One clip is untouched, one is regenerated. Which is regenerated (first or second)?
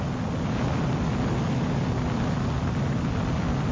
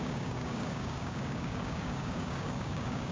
second